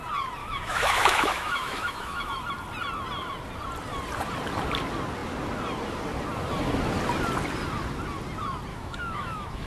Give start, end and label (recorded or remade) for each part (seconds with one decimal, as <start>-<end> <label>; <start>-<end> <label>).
0.0-0.4 recorded; 0.4-2.4 remade; 2.4-8.7 recorded; 8.7-9.7 remade